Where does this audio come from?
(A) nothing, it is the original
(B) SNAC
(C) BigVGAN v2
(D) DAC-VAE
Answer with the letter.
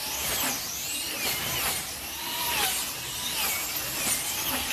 A